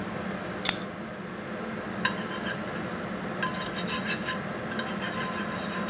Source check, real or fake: real